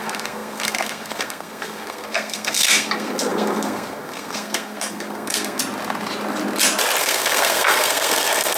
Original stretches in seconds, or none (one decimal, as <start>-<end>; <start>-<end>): 5.6-7.0